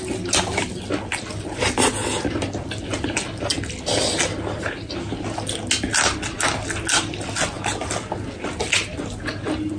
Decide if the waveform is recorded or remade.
recorded